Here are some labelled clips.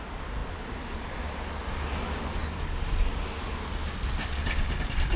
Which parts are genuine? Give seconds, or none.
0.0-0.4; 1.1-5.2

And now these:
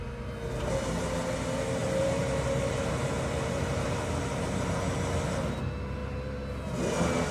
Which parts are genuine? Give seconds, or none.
0.0-1.8; 4.7-6.0; 6.7-7.3